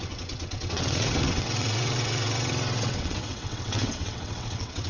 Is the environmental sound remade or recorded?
remade